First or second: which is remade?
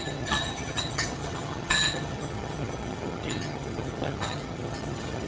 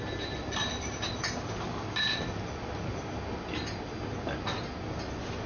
first